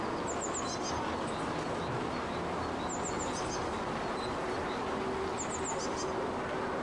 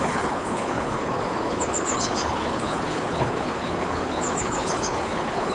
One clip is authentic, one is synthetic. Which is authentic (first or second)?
first